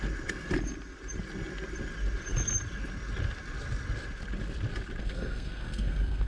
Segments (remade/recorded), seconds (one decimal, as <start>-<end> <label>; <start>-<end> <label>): 0.0-5.0 recorded; 5.0-6.3 remade